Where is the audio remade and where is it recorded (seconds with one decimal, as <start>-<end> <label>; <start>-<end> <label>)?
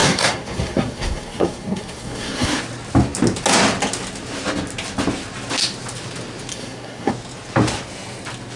0.0-2.6 remade; 2.6-6.5 recorded; 6.5-7.1 remade; 7.1-8.6 recorded